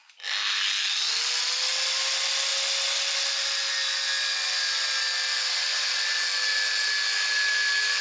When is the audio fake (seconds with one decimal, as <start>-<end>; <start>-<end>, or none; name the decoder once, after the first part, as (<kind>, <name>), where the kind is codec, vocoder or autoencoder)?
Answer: none